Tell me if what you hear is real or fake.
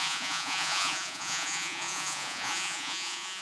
fake